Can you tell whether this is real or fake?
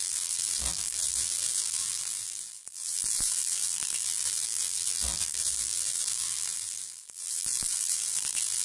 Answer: fake